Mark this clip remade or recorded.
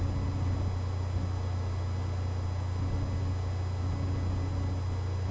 recorded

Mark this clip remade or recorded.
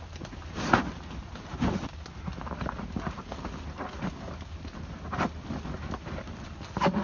recorded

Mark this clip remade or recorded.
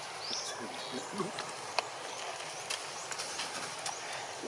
recorded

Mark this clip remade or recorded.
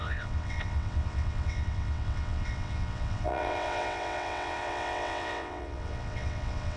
remade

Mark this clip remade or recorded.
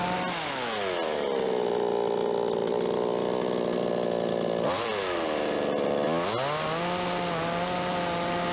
recorded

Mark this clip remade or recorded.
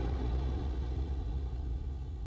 remade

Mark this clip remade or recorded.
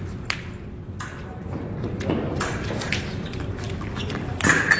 recorded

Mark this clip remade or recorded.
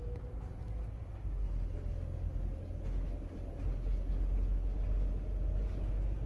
recorded